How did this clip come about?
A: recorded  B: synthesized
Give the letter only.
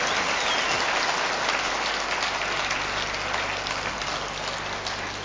A